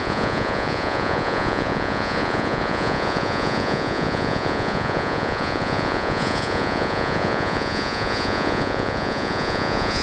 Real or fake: fake